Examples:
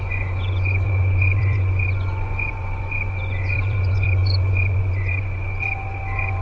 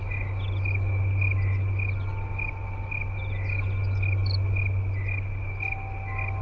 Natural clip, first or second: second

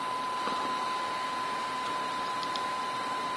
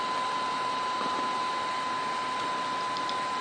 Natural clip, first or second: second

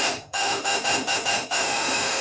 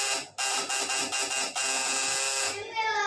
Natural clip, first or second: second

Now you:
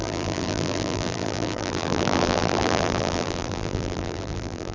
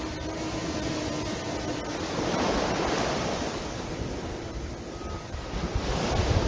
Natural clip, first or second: second